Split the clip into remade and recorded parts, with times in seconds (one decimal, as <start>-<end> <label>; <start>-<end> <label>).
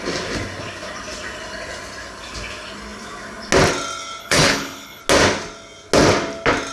0.0-4.2 recorded; 4.2-5.0 remade; 5.0-6.7 recorded